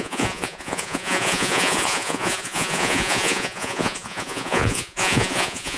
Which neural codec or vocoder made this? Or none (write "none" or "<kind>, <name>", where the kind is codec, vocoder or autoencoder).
vocoder, Vocos